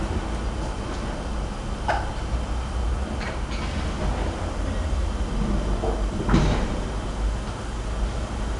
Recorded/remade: recorded